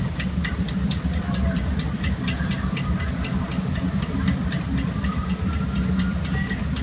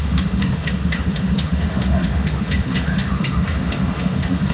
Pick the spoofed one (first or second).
second